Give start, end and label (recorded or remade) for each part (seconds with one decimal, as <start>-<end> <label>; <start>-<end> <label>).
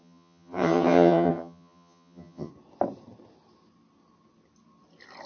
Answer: 0.0-2.5 remade; 2.5-5.3 recorded